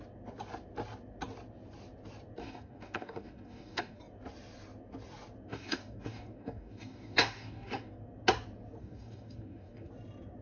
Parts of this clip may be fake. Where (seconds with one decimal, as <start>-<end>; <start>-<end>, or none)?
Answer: 2.4-4.0; 5.5-7.9; 8.8-9.9